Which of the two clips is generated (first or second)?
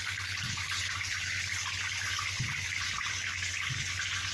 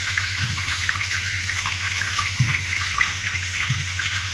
second